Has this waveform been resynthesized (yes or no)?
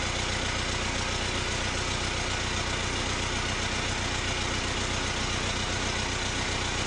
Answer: no